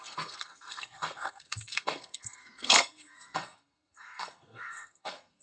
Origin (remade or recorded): remade